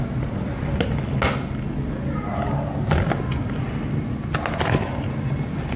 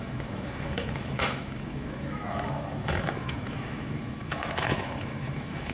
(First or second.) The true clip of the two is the first